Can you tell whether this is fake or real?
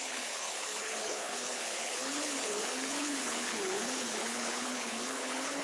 fake